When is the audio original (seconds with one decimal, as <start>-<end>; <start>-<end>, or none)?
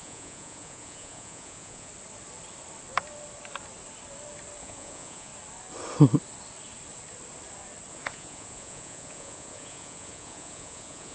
1.9-4.6; 5.3-7.9